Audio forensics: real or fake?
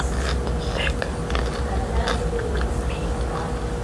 real